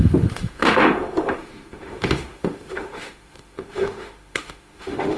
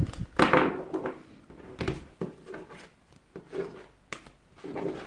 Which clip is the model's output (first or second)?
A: first